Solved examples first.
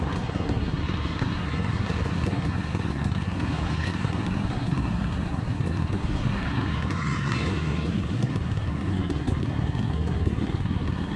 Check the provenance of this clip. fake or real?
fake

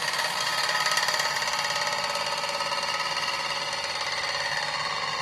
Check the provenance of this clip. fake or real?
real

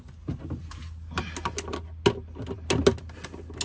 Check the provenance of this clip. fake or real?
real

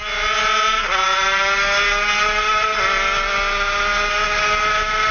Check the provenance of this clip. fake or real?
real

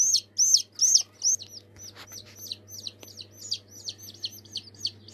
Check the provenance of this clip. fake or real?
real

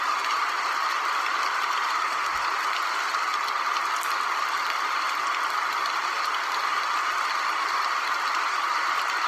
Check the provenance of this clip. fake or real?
real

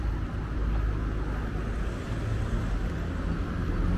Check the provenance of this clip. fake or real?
real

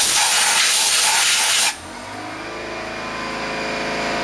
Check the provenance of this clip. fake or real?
real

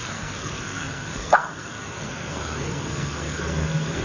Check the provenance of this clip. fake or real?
fake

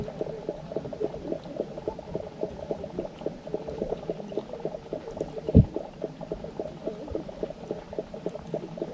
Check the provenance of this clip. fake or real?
real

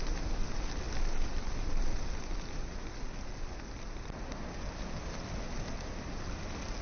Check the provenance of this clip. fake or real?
real